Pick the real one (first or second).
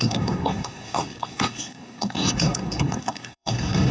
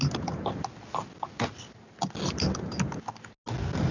second